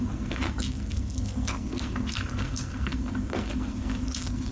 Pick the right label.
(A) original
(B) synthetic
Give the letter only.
B